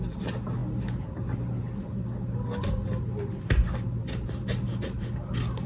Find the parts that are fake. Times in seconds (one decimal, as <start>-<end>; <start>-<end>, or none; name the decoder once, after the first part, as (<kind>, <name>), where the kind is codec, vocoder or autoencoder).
none